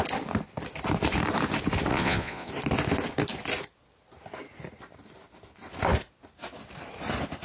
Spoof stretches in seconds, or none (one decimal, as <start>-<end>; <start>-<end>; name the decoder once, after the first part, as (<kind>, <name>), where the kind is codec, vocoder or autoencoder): 1.9-2.5 (vocoder, Vocos)